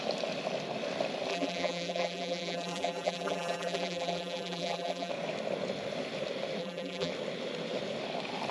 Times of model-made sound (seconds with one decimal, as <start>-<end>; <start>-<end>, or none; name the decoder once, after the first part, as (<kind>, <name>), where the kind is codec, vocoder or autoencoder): 1.3-5.1 (vocoder, BigVGAN v2); 6.6-7.1